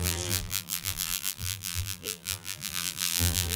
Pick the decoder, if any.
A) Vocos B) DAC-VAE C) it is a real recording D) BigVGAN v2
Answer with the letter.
D